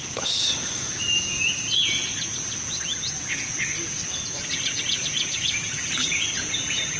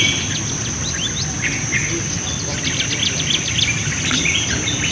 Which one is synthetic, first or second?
first